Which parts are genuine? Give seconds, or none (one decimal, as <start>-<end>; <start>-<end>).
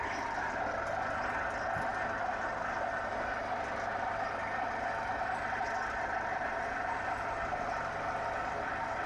0.0-9.1